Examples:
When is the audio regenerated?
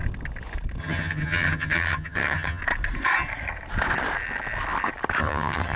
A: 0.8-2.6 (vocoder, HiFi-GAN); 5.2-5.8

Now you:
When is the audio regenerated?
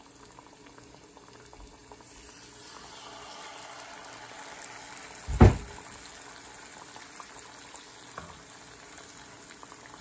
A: none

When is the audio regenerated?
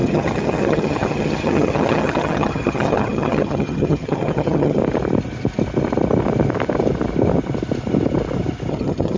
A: 0.0-4.8 (vocoder, HiFi-GAN); 8.7-9.2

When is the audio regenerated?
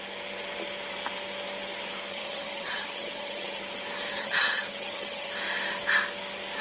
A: 2.1-3.6 (vocoder, HiFi-GAN); 4.1-5.3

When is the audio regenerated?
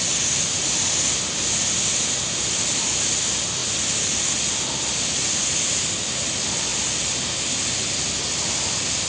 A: none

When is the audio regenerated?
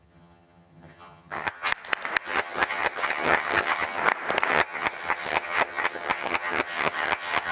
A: 0.0-1.7 (vocoder, HiFi-GAN); 2.2-4.0; 4.5-7.5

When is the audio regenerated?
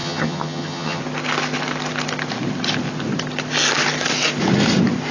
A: 0.0-1.0 (vocoder, HiFi-GAN)